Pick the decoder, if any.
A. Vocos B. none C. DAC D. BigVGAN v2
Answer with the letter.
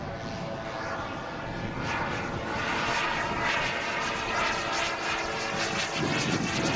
B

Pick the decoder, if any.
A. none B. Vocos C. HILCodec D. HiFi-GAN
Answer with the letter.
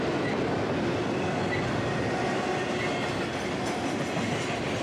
A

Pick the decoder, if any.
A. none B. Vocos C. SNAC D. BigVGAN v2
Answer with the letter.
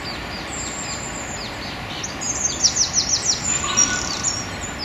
A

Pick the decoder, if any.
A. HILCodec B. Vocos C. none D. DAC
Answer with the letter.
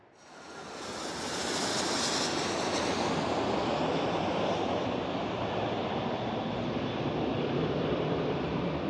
C